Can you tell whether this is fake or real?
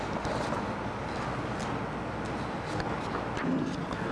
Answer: real